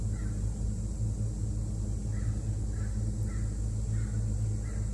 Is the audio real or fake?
real